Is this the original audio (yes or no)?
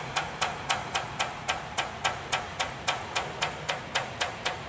no